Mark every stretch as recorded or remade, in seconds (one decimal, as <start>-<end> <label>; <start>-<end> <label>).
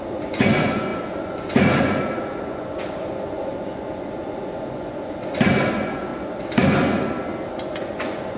0.0-6.1 remade; 6.1-7.5 recorded; 7.5-8.4 remade